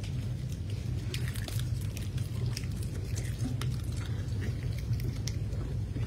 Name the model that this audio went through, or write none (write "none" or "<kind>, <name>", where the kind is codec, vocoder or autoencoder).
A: none